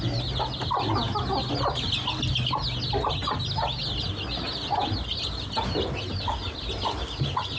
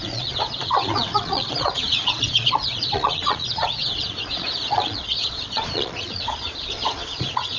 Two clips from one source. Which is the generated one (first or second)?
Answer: second